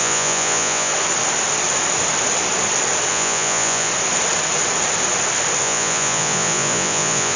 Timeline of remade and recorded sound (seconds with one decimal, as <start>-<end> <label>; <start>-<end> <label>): 0.0-0.9 remade; 0.9-3.1 recorded; 3.1-3.9 remade; 3.9-5.6 recorded; 5.6-7.4 remade